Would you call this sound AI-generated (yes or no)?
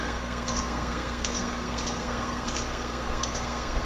yes